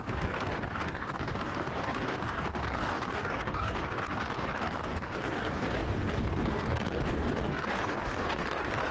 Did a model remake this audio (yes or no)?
yes